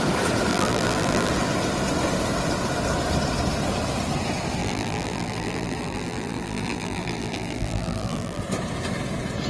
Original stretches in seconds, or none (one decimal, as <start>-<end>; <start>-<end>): 0.0-0.5; 1.3-4.6; 8.4-9.5